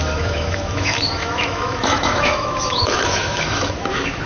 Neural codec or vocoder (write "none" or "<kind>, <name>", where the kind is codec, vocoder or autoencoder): autoencoder, DAC-VAE